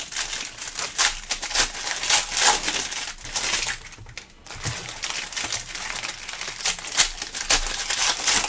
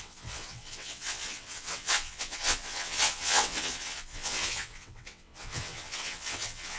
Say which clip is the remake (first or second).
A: second